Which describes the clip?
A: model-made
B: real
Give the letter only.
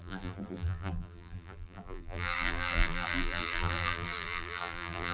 A